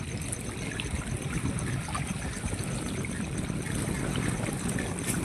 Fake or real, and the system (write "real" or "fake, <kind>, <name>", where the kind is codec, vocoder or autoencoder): real